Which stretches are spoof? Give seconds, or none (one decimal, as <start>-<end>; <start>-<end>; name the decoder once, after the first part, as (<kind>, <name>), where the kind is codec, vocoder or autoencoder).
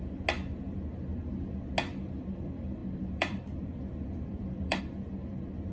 2.8-4.8 (vocoder, BigVGAN v2)